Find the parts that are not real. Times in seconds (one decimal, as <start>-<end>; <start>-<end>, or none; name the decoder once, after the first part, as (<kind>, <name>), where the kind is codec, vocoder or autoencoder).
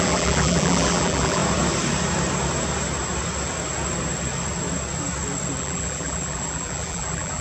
0.0-1.4 (vocoder, BigVGAN v2); 5.6-7.4